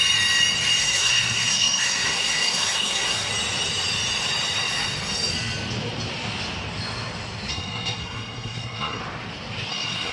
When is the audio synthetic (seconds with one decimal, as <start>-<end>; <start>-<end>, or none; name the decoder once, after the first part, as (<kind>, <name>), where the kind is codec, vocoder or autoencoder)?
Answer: 0.8-3.3 (codec, SNAC); 7.5-9.0; 9.7-10.1